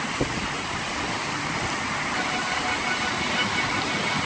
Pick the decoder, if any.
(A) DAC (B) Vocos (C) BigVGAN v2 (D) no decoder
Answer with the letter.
D